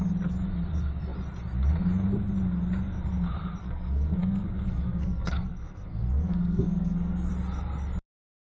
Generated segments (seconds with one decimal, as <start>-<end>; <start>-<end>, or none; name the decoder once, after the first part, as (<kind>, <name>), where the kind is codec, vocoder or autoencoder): 3.6-7.3 (codec, SNAC)

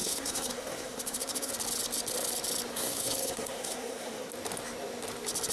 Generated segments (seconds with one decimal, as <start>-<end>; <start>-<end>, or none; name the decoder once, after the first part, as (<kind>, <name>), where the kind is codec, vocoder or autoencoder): 0.0-1.5 (codec, SNAC); 2.7-4.3

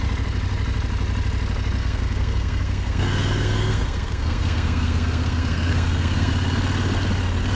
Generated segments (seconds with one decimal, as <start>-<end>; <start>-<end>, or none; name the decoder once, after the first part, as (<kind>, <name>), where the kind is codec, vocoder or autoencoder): 1.8-6.3 (codec, SNAC)